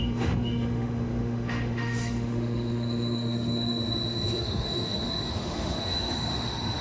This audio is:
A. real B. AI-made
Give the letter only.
B